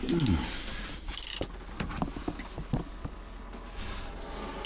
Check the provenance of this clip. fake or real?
real